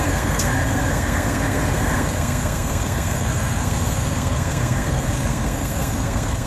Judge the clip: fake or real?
fake